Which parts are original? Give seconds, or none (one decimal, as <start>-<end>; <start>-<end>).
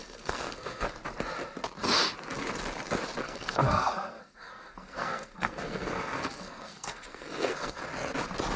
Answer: 0.9-3.2; 7.8-8.6